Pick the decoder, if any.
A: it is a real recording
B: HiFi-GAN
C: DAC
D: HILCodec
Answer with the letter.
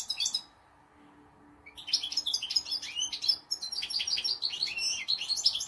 A